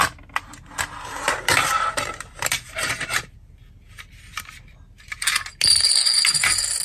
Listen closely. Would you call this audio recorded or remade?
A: recorded